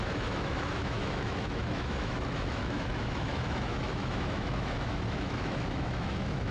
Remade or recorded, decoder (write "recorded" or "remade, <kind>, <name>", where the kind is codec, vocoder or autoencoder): remade, autoencoder, DAC-VAE